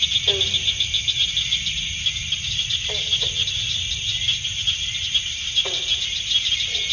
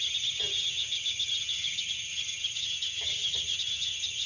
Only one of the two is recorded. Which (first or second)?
first